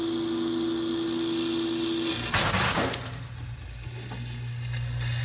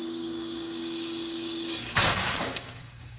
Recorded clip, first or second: first